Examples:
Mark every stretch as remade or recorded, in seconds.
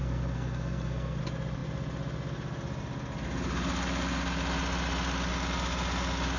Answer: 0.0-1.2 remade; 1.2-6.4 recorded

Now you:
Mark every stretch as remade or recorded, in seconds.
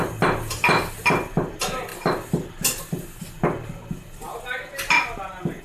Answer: 0.0-5.6 recorded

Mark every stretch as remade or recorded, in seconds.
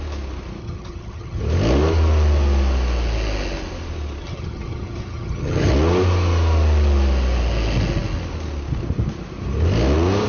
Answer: 0.0-0.6 recorded; 0.6-1.4 remade; 1.4-4.2 recorded; 4.2-5.7 remade; 5.7-10.3 recorded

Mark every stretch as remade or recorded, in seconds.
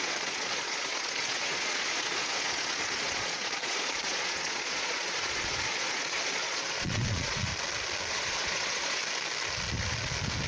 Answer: 0.0-7.5 remade; 7.5-8.1 recorded; 8.1-9.0 remade; 9.0-10.5 recorded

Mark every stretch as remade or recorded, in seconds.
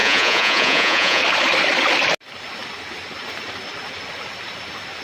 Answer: 0.0-1.2 remade; 1.2-5.0 recorded